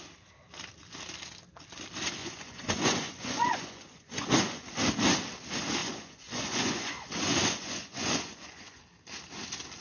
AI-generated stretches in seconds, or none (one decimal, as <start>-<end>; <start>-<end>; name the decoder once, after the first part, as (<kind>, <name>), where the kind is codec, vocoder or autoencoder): 2.2-4.7 (vocoder, Vocos); 5.8-8.8

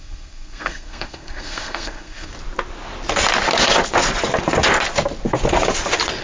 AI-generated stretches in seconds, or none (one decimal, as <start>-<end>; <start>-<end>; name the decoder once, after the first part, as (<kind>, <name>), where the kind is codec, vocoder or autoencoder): 0.0-2.3 (codec, SNAC)

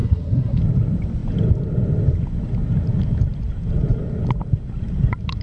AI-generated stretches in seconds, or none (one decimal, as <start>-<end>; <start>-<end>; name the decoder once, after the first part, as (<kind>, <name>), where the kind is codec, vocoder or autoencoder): 0.0-0.6 (codec, SNAC)

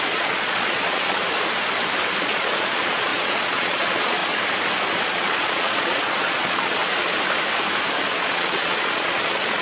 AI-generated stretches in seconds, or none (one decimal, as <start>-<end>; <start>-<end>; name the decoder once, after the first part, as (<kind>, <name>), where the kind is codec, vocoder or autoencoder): 0.0-1.2 (vocoder, Vocos); 2.2-4.2; 5.0-6.8; 8.0-9.6

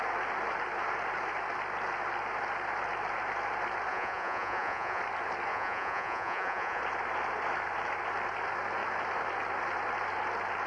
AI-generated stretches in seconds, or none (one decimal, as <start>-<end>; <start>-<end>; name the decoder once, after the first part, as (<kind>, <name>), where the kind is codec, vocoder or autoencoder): 3.9-5.0 (vocoder, Vocos); 5.5-6.8

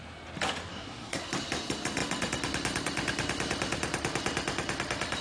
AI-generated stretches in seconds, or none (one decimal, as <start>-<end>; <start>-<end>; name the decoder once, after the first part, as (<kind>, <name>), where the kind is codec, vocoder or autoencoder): 0.7-1.3 (codec, SNAC)

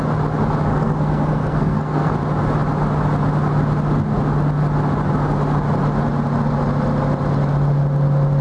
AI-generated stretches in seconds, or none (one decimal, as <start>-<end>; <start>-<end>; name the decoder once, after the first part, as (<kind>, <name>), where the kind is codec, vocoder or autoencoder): 0.7-2.1 (codec, SNAC)